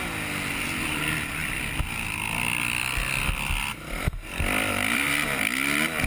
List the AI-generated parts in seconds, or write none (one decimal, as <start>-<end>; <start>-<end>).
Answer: 1.4-5.1